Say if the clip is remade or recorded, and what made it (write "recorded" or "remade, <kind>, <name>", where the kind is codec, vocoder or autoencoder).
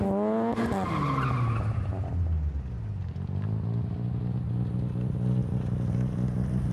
recorded